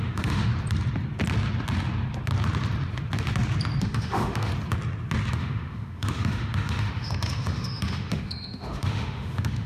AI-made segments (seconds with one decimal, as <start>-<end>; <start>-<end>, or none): 0.0-0.5; 3.8-4.5; 5.3-9.7

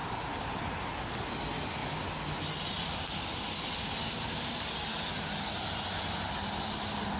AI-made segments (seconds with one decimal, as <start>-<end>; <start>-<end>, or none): none

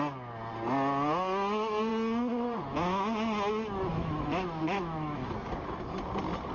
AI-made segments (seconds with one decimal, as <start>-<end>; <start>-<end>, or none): 3.9-5.3

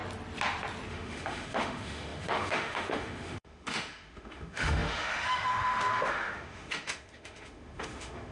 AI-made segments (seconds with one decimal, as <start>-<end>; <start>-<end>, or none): 0.9-8.3

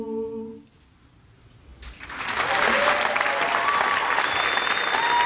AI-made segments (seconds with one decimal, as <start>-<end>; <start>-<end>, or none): none